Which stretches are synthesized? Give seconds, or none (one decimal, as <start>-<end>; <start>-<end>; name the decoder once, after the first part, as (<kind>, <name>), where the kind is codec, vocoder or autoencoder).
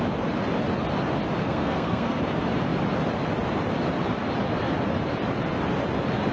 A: 1.4-2.2 (codec, SNAC)